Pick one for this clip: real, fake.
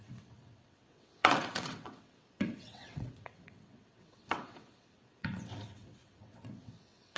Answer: fake